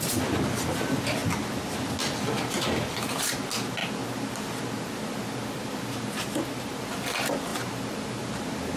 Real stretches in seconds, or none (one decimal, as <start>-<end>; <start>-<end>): 0.0-7.5; 8.4-8.8

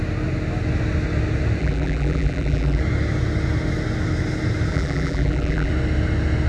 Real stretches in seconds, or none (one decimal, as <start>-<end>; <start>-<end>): 0.0-1.6; 2.8-4.7; 5.7-6.5

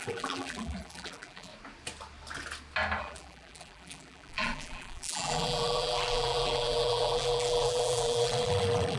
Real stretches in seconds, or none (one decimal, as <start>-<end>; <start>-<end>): 1.5-3.0

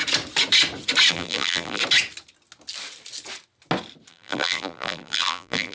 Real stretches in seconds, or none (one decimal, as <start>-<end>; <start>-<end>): 0.0-1.1; 1.8-4.1

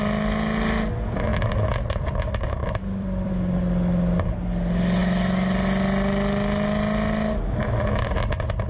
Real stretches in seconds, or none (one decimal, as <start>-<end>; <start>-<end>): 0.0-1.3; 2.2-2.6; 3.3-8.7

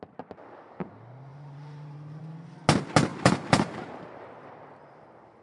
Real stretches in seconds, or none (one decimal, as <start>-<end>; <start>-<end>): 0.0-1.3; 2.2-3.1; 3.9-5.4